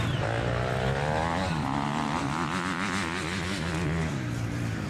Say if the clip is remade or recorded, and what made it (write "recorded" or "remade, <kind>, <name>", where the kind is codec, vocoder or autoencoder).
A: recorded